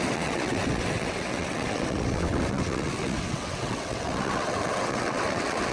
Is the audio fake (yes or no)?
yes